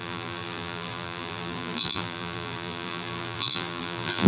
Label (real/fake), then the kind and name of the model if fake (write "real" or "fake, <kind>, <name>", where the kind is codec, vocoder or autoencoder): fake, vocoder, BigVGAN v2